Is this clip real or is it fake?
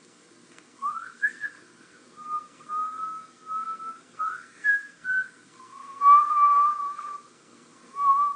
fake